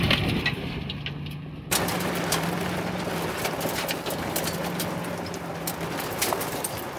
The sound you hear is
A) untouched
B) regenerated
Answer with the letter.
A